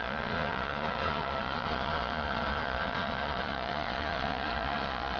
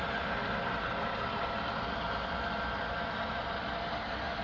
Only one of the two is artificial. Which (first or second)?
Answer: first